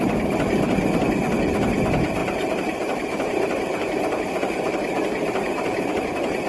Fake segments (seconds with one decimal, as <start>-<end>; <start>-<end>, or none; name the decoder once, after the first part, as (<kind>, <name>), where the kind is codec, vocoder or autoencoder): 2.2-6.1 (vocoder, BigVGAN v2)